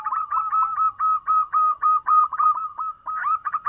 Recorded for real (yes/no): no